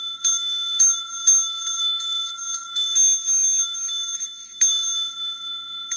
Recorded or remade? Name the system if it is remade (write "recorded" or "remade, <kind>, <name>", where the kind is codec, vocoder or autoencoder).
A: remade, codec, DAC